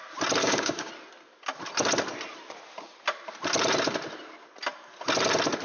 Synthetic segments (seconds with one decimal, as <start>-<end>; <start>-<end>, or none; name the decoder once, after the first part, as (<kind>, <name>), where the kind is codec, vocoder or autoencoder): 0.4-0.9 (codec, DAC)